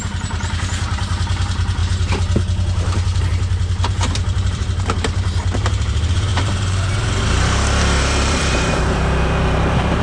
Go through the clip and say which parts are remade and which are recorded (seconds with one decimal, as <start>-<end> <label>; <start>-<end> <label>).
0.0-1.8 remade; 1.8-3.2 recorded; 3.2-10.0 remade